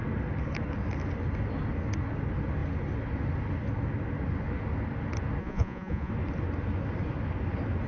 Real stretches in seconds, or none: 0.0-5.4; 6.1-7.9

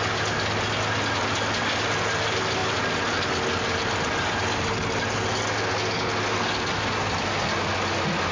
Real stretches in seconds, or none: 0.0-8.3

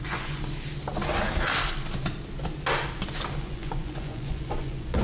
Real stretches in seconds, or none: 0.4-3.4